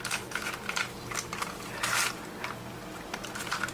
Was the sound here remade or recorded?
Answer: recorded